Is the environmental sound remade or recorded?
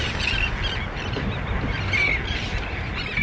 recorded